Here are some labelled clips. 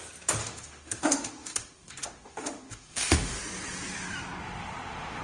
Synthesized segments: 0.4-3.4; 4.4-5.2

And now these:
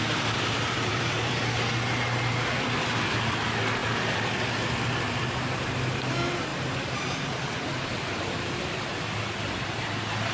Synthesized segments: 0.0-1.3; 6.5-7.2

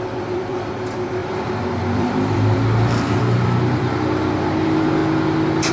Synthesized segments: 0.0-5.0

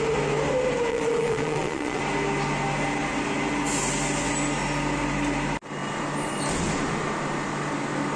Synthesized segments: 0.9-2.0